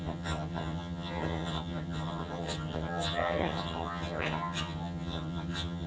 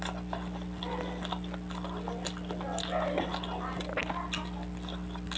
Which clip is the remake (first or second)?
first